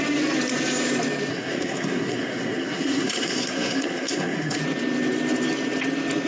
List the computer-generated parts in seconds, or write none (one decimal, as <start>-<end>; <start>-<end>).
1.3-4.6

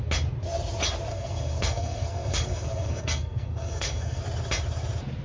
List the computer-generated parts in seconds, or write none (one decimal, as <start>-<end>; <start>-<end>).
1.1-4.2

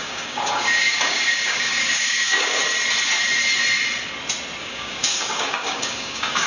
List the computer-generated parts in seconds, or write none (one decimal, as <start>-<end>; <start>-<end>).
0.0-2.6; 4.6-6.5

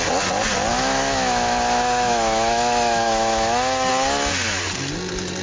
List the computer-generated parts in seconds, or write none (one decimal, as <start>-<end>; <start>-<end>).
0.7-3.9

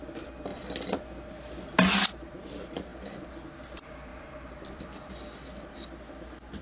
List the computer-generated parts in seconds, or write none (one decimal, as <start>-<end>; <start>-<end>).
4.1-5.1